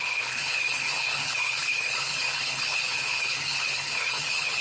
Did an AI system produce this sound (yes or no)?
yes